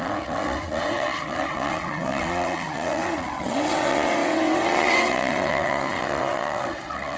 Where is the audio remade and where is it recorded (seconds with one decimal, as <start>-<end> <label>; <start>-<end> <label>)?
0.0-7.2 remade